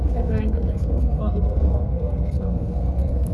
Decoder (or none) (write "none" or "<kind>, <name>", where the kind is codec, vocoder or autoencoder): codec, SNAC